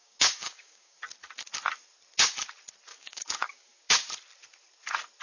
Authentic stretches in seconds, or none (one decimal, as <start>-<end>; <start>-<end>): 1.0-2.9; 4.1-5.2